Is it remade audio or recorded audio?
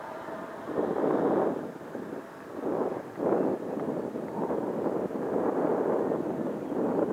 recorded